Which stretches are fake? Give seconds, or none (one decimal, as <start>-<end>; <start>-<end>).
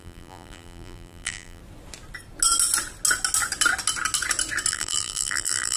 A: 0.0-1.6; 4.7-5.8